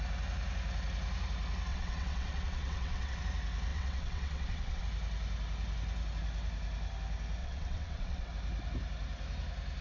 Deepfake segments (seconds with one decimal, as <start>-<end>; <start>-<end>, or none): 1.7-3.2; 3.7-4.8; 7.4-8.3